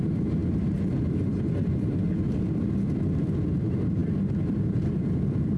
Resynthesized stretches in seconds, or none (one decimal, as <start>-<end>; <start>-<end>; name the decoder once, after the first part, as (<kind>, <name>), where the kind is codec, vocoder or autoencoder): none